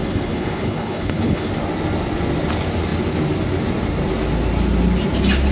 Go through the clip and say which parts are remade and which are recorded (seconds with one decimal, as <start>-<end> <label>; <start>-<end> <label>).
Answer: 0.0-1.5 remade; 1.5-5.5 recorded